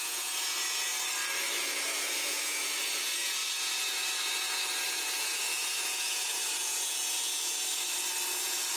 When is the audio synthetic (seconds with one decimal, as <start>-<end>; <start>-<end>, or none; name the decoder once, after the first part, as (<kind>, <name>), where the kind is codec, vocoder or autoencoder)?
0.0-0.9 (vocoder, Vocos); 1.6-7.5; 8.4-8.8